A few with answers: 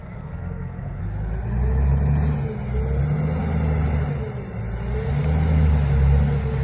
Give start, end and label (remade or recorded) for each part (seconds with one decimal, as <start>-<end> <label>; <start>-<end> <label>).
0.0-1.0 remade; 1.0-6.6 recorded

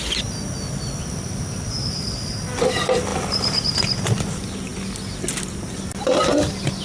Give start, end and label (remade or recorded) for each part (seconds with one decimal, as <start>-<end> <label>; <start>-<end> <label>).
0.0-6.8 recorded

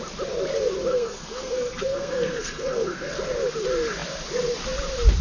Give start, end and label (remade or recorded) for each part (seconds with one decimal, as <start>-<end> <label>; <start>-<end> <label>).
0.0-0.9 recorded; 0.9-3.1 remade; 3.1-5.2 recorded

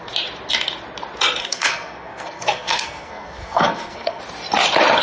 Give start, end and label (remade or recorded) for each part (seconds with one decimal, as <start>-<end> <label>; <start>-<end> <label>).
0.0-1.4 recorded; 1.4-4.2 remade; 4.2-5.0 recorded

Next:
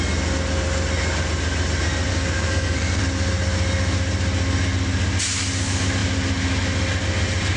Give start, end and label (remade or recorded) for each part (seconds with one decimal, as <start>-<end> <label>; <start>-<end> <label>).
0.0-2.1 recorded; 2.1-3.0 remade; 3.0-7.6 recorded